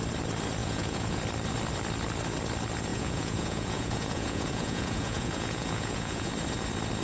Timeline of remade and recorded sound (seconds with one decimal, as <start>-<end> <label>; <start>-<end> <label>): 0.0-0.6 recorded; 0.6-1.2 remade; 1.2-2.9 recorded; 2.9-6.3 remade; 6.3-7.0 recorded